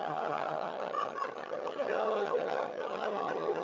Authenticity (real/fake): fake